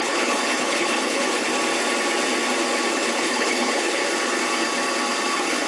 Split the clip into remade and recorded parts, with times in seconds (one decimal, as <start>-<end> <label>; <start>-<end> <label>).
0.0-1.5 remade; 1.5-2.9 recorded; 2.9-4.0 remade; 4.0-5.3 recorded; 5.3-5.7 remade